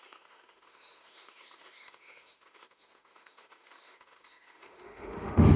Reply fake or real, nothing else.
fake